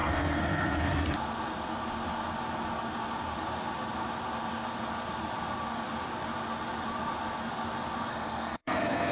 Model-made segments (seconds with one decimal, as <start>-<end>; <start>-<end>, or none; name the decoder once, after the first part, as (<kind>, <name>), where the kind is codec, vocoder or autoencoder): 0.0-0.9 (codec, SNAC); 8.1-9.1